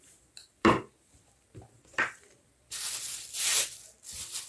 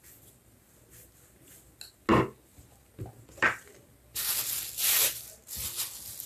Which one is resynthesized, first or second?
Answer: first